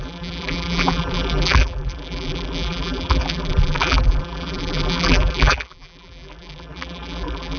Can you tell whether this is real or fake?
fake